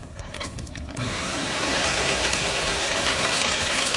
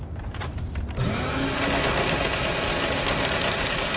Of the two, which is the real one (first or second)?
second